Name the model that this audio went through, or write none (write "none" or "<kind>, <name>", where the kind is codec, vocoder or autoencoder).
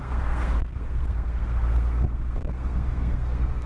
codec, SNAC